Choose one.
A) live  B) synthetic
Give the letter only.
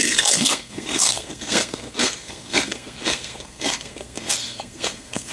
B